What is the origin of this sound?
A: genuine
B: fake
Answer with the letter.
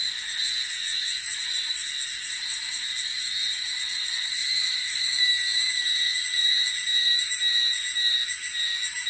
B